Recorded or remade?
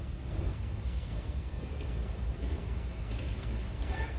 remade